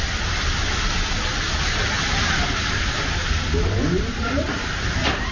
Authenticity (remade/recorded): recorded